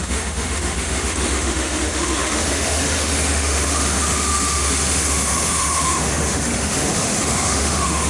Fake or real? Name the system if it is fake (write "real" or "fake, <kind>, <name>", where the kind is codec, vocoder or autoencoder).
fake, autoencoder, DAC-VAE